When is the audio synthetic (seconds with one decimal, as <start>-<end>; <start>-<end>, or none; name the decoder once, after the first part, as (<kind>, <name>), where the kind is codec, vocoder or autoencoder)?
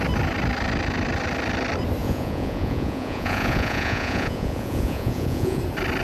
2.0-5.6 (vocoder, Vocos)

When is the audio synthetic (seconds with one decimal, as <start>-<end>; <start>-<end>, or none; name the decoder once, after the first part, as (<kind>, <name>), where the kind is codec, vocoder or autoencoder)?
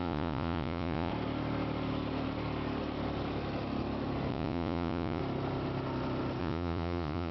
0.0-1.1 (vocoder, Vocos); 4.3-5.2; 6.4-7.3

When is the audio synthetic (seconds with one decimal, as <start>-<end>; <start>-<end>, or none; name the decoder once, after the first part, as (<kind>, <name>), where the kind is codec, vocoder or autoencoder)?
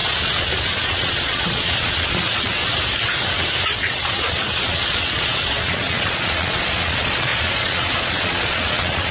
0.0-2.7 (vocoder, Vocos); 3.6-9.1